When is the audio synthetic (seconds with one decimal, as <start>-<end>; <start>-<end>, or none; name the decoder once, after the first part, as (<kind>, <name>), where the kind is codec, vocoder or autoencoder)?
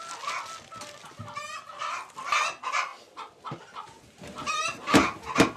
none